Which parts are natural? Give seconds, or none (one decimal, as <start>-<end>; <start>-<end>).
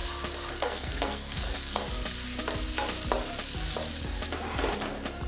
0.0-0.5; 1.8-5.3